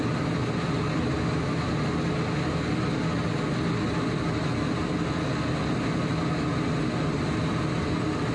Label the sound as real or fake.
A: real